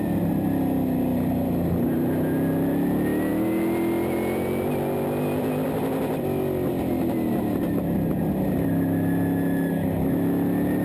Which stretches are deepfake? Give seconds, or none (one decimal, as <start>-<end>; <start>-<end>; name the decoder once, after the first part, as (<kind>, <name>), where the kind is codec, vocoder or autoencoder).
none